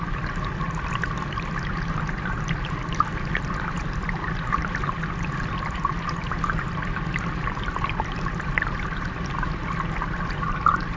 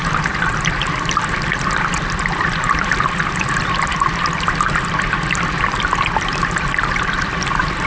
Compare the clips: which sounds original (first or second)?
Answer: first